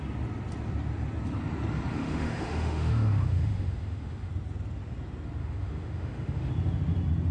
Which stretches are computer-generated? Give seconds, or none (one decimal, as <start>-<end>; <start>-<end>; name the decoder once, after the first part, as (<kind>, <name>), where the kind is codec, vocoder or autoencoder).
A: 1.9-4.3 (autoencoder, DAC-VAE); 5.4-6.5